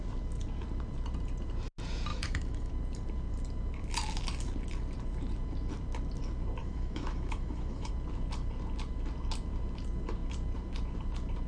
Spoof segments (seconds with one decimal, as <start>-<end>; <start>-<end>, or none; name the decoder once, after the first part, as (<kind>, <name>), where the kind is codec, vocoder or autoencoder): 2.1-2.7 (autoencoder, DAC-VAE); 6.6-7.9